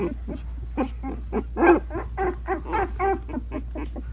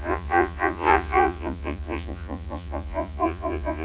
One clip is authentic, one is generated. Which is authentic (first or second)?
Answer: first